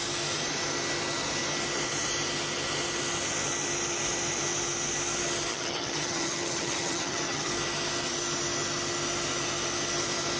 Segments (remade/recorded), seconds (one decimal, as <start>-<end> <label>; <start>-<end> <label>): 0.0-5.5 recorded; 5.5-7.5 remade; 7.5-10.4 recorded